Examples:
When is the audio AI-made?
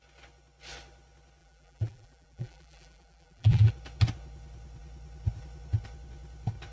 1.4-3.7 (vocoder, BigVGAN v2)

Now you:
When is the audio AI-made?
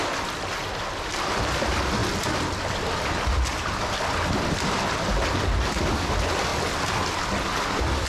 0.8-6.5 (vocoder, BigVGAN v2); 7.3-8.1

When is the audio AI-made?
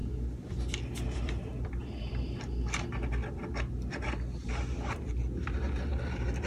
0.0-2.4 (vocoder, BigVGAN v2)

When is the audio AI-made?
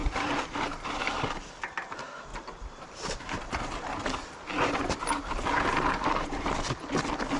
0.0-1.2 (vocoder, BigVGAN v2); 2.3-6.5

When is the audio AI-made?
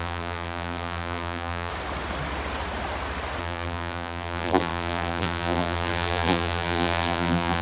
0.0-1.7 (vocoder, BigVGAN v2); 3.4-7.6